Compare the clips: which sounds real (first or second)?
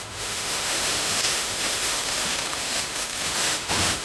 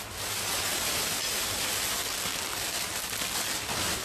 second